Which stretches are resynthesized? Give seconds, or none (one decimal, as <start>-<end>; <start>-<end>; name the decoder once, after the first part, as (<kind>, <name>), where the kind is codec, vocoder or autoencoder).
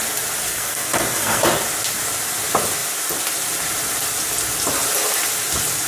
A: 0.4-1.4 (codec, SNAC)